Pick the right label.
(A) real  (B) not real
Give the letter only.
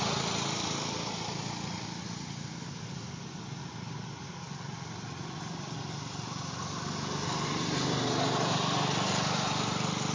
A